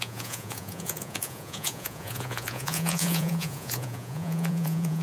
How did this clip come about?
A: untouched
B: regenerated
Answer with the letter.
B